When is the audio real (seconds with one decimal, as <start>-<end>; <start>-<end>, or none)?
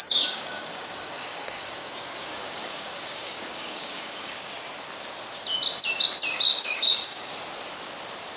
4.5-6.5; 7.3-8.4